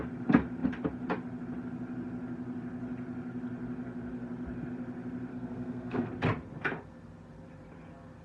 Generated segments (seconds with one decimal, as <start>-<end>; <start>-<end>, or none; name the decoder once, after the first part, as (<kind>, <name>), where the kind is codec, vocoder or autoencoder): 5.3-6.1 (codec, SNAC)

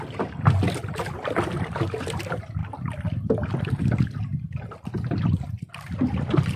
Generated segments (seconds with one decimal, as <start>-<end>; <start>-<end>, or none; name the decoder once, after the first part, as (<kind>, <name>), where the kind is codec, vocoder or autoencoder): none

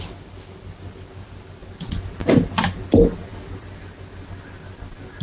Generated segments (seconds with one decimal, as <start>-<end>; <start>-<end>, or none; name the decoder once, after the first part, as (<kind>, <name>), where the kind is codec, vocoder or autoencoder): none

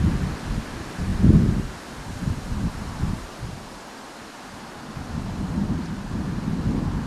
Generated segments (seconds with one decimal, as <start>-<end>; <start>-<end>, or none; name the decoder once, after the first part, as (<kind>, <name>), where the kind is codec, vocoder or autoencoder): none

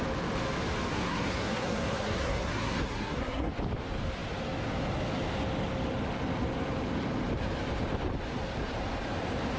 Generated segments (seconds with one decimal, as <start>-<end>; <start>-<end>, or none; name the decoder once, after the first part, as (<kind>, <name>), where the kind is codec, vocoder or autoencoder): 0.9-3.5 (codec, SNAC)

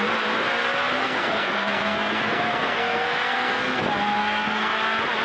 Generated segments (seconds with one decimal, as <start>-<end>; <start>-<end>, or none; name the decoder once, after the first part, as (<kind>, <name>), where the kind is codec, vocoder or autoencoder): 1.0-3.8 (codec, SNAC); 4.2-4.8